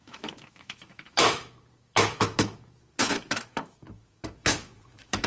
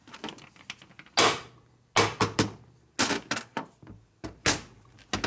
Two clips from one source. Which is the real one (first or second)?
second